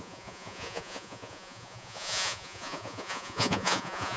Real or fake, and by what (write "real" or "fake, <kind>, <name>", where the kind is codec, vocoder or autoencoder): fake, vocoder, Vocos